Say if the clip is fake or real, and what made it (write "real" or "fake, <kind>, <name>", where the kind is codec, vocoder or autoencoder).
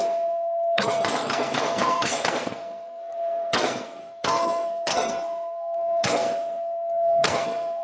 fake, codec, SNAC